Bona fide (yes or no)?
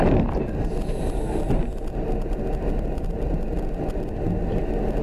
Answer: yes